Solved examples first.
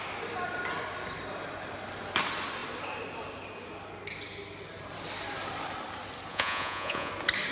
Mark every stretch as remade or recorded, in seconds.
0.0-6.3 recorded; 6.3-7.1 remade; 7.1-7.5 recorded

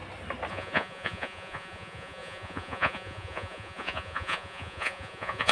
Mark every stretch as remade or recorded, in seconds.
0.0-0.5 recorded; 0.5-5.5 remade

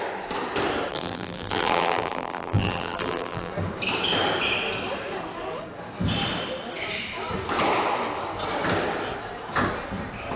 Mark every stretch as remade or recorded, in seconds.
0.0-0.9 recorded; 0.9-3.5 remade; 3.5-10.4 recorded